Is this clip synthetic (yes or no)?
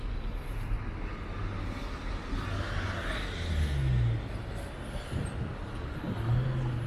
no